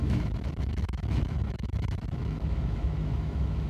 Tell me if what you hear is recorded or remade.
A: remade